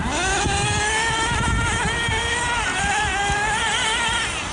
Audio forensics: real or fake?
real